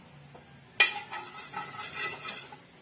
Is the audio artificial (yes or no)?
no